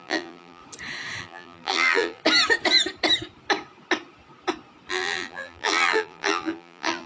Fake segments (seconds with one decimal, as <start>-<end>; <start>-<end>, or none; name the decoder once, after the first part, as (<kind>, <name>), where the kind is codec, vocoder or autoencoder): 0.0-0.6 (vocoder, BigVGAN v2); 1.2-2.2; 4.9-7.1